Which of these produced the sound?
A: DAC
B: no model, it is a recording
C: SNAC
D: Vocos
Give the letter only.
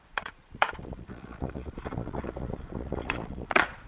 D